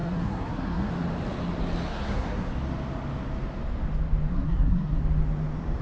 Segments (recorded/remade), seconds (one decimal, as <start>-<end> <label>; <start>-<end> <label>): 0.0-0.9 remade; 0.9-1.9 recorded; 1.9-2.5 remade; 2.5-4.3 recorded; 4.3-5.0 remade; 5.0-5.8 recorded